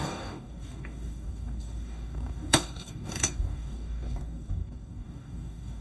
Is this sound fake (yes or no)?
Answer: yes